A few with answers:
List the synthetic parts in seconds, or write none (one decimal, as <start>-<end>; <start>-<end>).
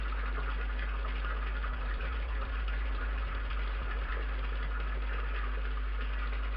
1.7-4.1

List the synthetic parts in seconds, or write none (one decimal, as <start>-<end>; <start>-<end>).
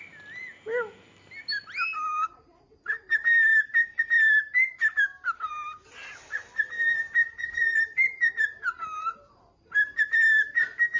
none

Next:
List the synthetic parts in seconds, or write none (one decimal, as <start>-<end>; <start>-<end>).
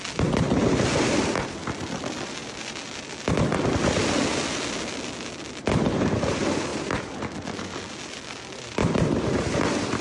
0.0-2.4; 5.9-10.0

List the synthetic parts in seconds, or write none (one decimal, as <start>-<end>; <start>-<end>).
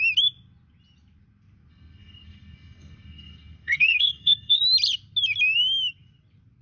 1.7-4.6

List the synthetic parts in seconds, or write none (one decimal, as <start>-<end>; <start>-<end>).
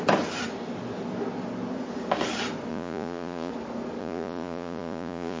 2.7-3.5; 4.0-5.4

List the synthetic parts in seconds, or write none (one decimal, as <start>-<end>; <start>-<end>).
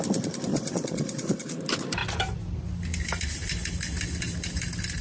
0.5-1.6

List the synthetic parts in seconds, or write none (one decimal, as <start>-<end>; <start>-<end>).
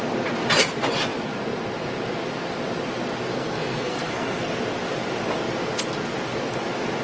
3.3-4.6